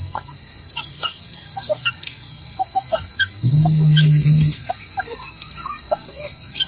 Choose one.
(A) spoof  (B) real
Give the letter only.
A